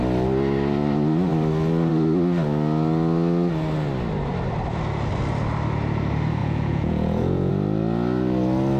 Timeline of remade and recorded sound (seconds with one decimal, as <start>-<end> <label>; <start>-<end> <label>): 0.0-6.4 recorded; 6.4-7.5 remade; 7.5-8.8 recorded

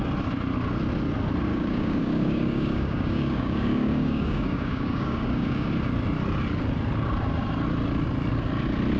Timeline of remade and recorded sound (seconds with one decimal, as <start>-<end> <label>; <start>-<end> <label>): 0.0-1.5 recorded; 1.5-5.7 remade; 5.7-9.0 recorded

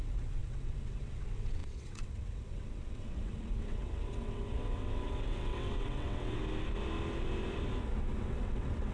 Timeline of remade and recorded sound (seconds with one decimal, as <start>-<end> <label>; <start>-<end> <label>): 0.0-6.4 remade; 6.4-8.2 recorded; 8.2-8.9 remade

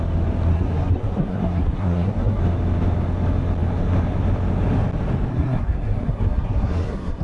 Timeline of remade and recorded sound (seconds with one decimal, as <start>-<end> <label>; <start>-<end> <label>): 0.0-0.5 recorded; 0.5-2.4 remade; 2.4-5.3 recorded; 5.3-7.2 remade

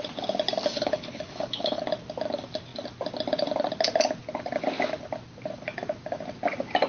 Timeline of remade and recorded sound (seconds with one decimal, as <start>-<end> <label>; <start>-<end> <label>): 0.0-0.7 recorded; 0.7-1.8 remade; 1.8-6.9 recorded

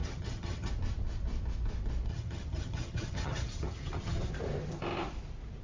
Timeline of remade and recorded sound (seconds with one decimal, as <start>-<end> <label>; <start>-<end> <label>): 0.0-0.7 remade; 0.7-2.1 recorded; 2.1-4.3 remade; 4.3-5.6 recorded

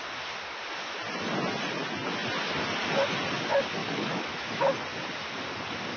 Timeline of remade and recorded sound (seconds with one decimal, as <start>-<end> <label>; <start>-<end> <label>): 0.0-3.8 recorded; 3.8-4.6 remade; 4.6-6.0 recorded

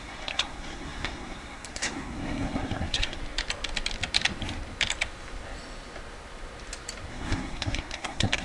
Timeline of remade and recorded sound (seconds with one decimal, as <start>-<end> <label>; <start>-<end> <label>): 0.0-3.2 remade; 3.2-7.1 recorded; 7.1-8.4 remade